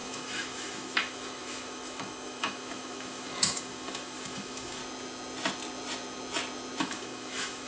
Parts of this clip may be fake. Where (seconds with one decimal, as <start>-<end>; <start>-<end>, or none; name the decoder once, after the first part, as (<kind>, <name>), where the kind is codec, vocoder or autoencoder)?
0.0-4.8 (autoencoder, DAC-VAE); 6.8-7.7